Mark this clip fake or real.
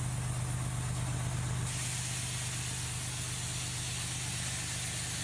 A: real